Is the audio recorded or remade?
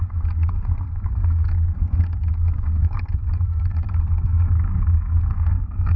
remade